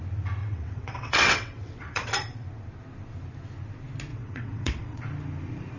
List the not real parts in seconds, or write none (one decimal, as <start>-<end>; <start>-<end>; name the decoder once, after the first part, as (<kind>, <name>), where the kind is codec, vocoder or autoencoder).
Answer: 0.4-2.1 (vocoder, WaveNeXt); 4.1-5.0